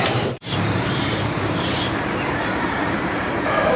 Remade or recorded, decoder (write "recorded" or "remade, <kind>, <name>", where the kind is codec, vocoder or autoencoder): remade, vocoder, BigVGAN v2